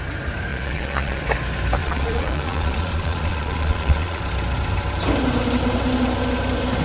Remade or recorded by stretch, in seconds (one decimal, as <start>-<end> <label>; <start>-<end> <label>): 0.0-0.5 recorded; 0.5-1.2 remade; 1.2-1.8 recorded; 1.8-4.2 remade; 4.2-6.8 recorded